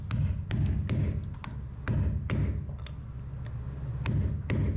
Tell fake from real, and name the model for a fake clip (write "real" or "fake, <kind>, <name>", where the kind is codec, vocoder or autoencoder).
real